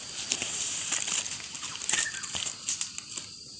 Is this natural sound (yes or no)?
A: yes